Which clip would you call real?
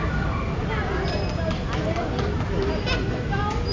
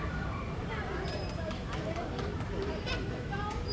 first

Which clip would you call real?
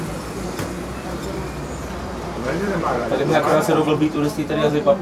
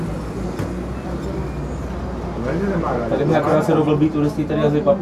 second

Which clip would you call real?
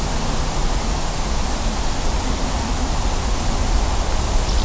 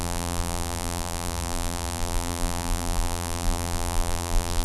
first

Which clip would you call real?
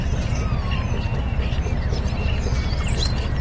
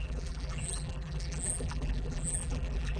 first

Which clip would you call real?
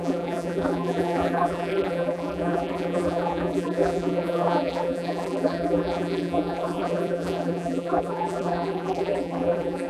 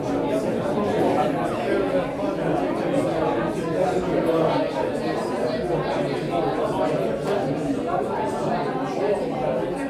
second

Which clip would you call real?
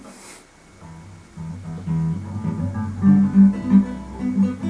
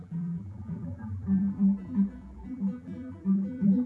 first